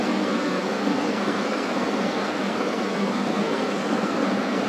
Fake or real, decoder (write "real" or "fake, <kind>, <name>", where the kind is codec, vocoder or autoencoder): fake, codec, SNAC